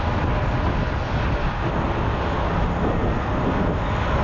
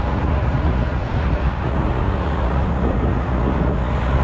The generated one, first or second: second